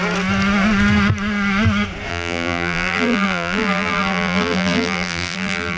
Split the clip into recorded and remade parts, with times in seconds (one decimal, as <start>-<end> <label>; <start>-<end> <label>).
0.0-2.1 recorded; 2.1-5.8 remade